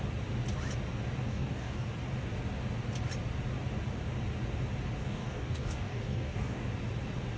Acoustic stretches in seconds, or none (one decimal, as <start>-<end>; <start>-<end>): 0.0-1.3; 1.9-5.0; 6.7-7.4